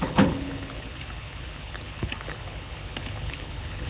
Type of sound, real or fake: fake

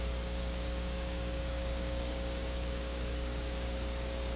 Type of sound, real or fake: fake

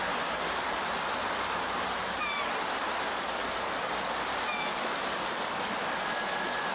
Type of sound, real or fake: real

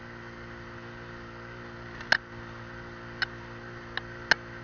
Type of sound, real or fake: real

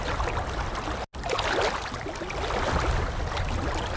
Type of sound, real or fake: real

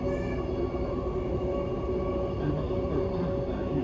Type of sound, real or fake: real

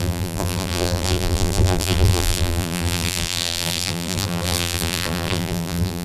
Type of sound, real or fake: fake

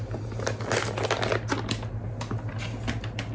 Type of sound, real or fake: real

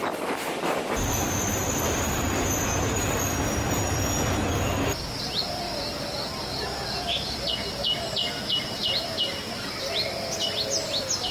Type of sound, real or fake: real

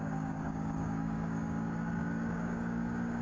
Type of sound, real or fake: fake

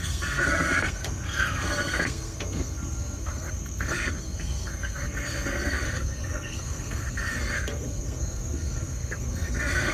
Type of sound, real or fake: fake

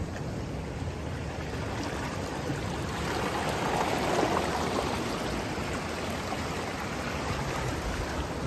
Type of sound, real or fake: real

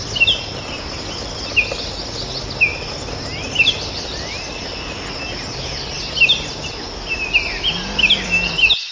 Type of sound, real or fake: real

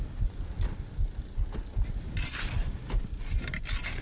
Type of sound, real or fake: real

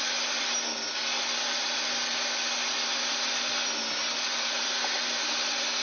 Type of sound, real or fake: real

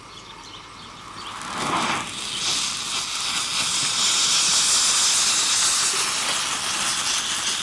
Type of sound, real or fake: real